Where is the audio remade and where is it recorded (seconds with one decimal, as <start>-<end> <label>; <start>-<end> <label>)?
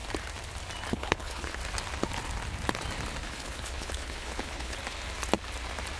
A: 0.0-0.9 recorded; 0.9-1.6 remade; 1.6-3.2 recorded; 3.2-4.8 remade; 4.8-6.0 recorded